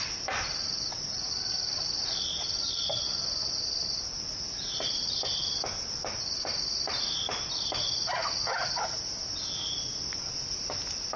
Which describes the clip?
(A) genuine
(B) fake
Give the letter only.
A